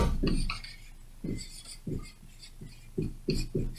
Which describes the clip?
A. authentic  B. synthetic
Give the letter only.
A